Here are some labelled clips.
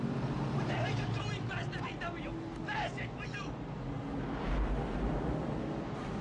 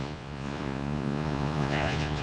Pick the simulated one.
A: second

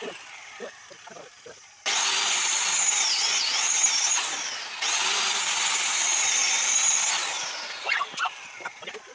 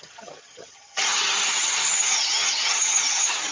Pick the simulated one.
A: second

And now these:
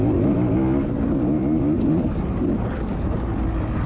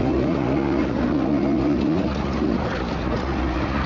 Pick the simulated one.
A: second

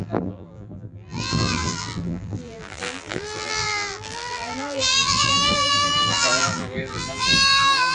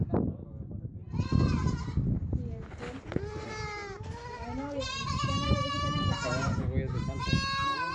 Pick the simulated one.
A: first